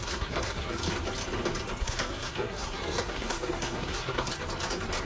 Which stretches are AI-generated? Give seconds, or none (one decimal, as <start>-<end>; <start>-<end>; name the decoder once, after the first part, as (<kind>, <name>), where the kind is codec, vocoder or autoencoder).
0.0-0.8 (codec, SNAC); 1.8-4.3